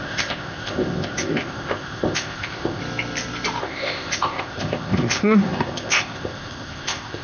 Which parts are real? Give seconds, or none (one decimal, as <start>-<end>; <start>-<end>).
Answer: 2.8-3.6